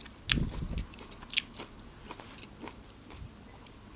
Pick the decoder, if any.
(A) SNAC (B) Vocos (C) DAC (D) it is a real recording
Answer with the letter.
D